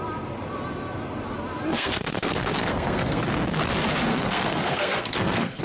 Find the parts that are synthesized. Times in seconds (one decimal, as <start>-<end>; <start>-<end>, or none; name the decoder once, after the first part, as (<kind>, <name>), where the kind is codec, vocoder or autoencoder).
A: 1.7-3.2 (codec, SNAC); 4.1-5.6

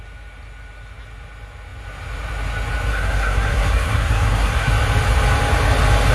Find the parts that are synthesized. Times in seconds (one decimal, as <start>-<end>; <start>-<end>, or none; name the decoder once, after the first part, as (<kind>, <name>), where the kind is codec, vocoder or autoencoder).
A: 2.9-4.7 (codec, SNAC)

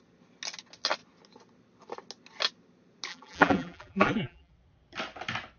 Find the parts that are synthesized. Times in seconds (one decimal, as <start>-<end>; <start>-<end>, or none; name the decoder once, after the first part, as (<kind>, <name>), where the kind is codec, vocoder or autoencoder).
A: 3.1-4.5 (vocoder, BigVGAN v2)

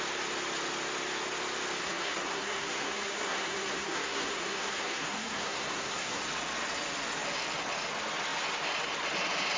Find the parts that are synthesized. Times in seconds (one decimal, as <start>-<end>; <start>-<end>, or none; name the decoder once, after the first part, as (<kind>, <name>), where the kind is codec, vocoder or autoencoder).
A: 1.8-6.2 (codec, SNAC)

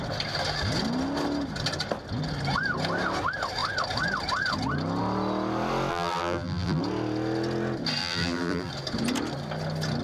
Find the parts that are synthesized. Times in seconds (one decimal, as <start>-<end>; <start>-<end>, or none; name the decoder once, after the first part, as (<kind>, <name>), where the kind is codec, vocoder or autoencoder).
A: 5.9-6.8 (vocoder, BigVGAN v2); 8.0-8.7

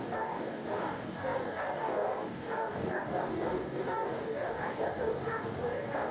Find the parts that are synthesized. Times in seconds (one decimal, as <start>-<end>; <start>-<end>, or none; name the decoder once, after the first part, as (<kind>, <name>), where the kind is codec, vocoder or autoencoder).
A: 0.0-6.1 (codec, DAC)